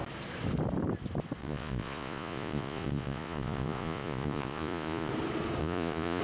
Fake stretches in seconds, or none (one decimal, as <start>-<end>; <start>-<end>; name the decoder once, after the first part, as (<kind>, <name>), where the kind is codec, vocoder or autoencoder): 1.4-5.1 (vocoder, Vocos); 5.6-6.2